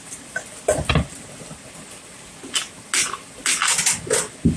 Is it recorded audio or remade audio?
recorded